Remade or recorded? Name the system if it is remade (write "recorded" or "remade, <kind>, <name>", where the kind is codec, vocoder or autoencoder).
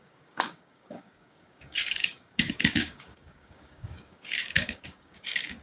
remade, codec, DAC